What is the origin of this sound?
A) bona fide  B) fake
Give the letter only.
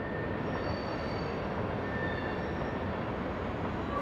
A